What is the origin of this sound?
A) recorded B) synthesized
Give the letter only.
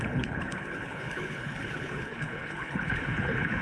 B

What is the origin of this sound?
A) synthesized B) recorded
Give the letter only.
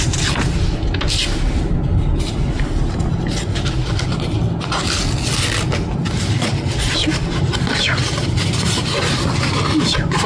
B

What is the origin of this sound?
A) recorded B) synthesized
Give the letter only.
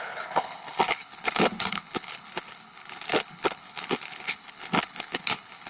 B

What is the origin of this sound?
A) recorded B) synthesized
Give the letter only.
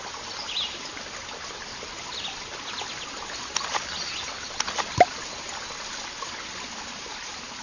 A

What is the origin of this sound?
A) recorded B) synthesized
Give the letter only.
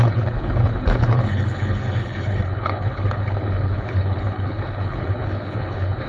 B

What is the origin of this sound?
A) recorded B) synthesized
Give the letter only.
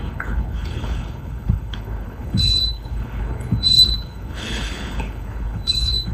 B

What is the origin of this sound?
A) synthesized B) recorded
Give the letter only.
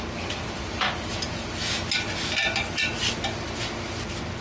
B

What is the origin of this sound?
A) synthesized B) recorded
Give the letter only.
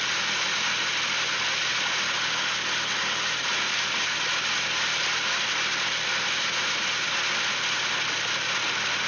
B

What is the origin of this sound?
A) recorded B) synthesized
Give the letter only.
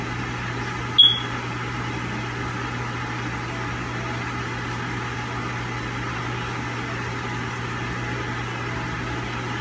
A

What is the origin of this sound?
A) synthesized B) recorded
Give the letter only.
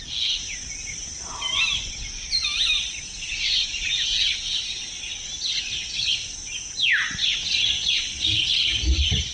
B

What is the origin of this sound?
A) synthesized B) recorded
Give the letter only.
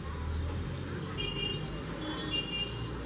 B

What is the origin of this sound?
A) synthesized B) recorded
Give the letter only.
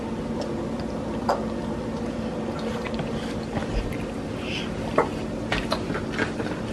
B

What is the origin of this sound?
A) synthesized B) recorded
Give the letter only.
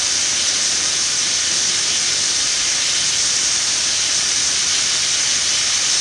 B